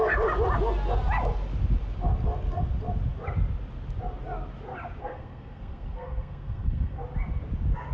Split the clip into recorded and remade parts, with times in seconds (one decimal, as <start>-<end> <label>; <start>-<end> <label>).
0.0-5.0 recorded; 5.0-7.0 remade; 7.0-7.9 recorded

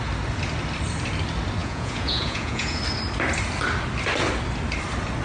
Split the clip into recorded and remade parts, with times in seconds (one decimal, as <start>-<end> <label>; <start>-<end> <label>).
0.0-1.6 recorded; 1.6-2.8 remade; 2.8-5.2 recorded

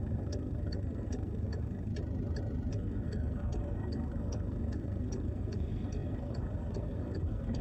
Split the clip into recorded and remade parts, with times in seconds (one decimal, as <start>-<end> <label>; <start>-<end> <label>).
0.0-1.9 remade; 1.9-2.7 recorded; 2.7-7.6 remade

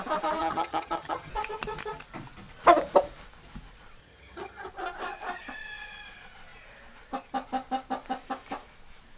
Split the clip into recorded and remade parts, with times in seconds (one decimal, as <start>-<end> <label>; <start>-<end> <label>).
0.0-0.4 recorded; 0.4-1.3 remade; 1.3-4.0 recorded; 4.0-4.7 remade; 4.7-9.2 recorded

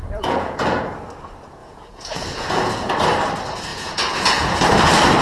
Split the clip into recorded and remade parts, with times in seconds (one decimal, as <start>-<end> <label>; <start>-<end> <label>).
0.0-0.6 remade; 0.6-1.6 recorded; 1.6-2.9 remade; 2.9-3.7 recorded; 3.7-4.6 remade; 4.6-5.2 recorded